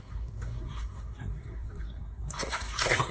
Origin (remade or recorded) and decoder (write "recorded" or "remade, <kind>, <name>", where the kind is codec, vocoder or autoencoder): remade, codec, SNAC